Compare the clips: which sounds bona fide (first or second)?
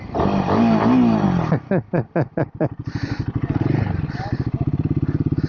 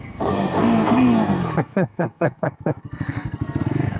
first